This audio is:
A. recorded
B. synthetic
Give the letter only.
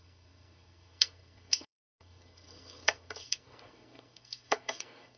B